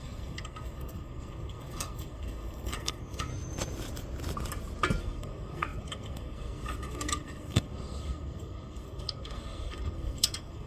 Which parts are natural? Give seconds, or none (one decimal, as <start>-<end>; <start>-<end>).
3.3-5.0